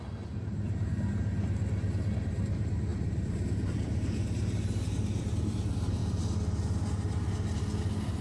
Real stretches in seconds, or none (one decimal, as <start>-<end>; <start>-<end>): 1.3-2.2; 6.0-8.2

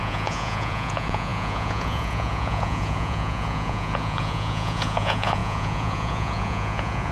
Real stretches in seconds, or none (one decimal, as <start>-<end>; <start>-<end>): none

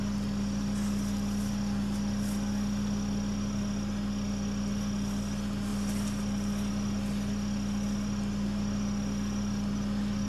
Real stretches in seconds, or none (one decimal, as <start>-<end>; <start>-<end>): 0.0-10.3

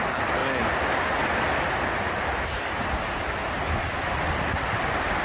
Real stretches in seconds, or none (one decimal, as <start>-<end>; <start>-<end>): 0.0-5.2